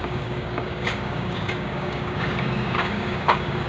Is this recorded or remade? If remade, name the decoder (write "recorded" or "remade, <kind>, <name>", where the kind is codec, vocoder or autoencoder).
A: remade, codec, DAC